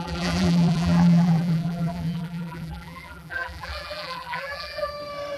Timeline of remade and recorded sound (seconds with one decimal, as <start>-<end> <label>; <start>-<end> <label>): 0.0-4.9 remade; 4.9-5.4 recorded